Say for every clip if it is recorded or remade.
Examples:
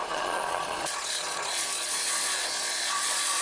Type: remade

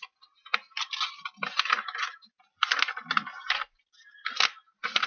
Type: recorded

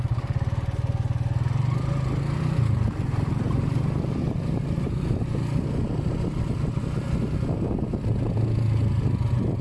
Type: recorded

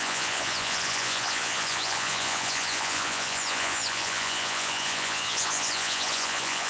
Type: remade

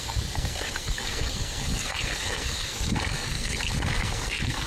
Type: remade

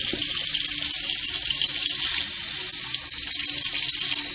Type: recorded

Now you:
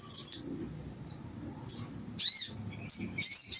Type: recorded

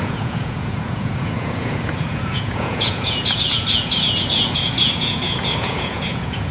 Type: remade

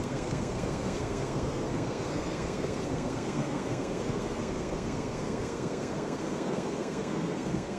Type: remade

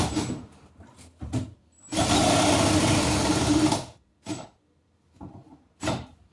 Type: recorded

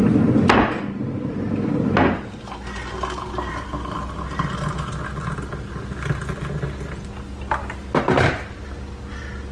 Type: recorded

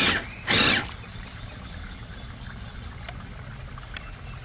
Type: recorded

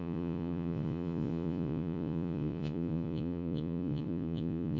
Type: remade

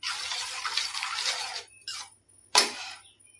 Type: recorded